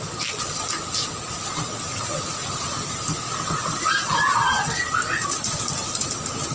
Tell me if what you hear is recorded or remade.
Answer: recorded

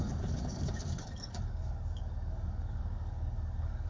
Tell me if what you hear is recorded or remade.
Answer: remade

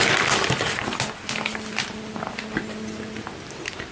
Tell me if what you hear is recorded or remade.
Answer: recorded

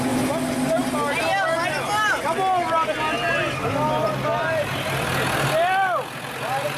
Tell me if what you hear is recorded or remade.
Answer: recorded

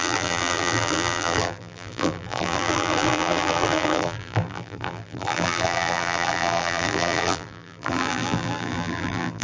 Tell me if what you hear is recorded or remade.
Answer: remade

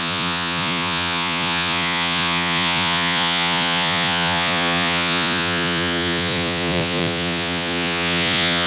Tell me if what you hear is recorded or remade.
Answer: remade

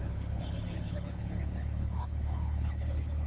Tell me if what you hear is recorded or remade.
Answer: remade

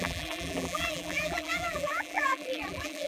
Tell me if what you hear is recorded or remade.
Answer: remade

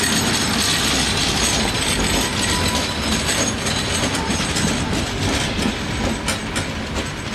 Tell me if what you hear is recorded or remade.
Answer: recorded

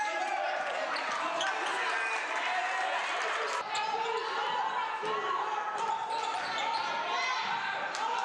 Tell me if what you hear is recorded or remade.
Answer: recorded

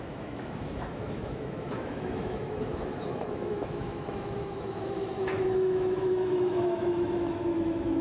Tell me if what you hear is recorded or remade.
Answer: remade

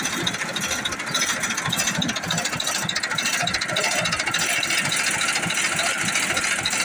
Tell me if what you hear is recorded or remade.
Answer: recorded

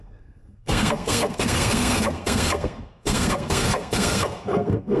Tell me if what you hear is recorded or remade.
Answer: remade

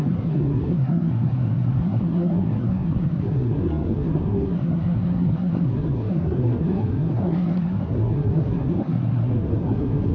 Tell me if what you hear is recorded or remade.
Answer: remade